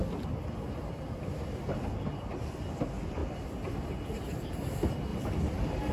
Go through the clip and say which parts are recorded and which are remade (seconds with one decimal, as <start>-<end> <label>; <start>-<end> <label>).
0.0-3.2 recorded; 3.2-3.7 remade; 3.7-5.1 recorded; 5.1-5.9 remade